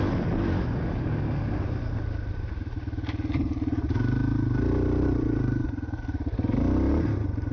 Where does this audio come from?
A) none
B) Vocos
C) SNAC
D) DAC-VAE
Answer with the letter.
A